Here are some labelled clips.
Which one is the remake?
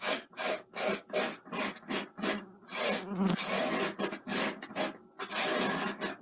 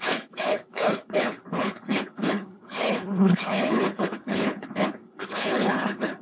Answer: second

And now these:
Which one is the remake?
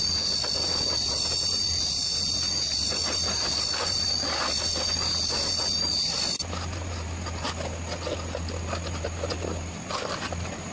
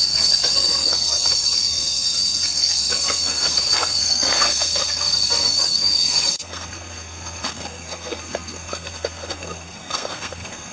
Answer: second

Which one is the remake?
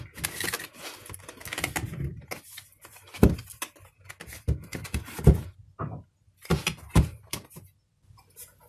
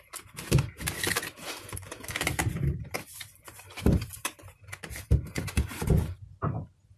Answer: second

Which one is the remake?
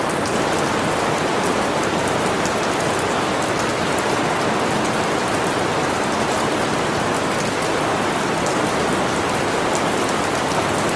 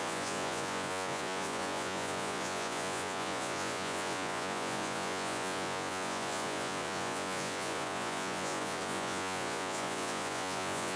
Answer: second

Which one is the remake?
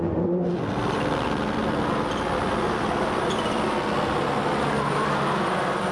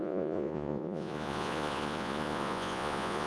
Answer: second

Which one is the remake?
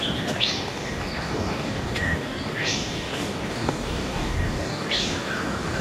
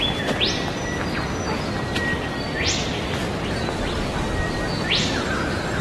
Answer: first